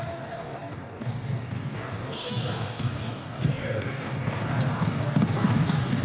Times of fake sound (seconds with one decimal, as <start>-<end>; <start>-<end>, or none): 0.0-6.0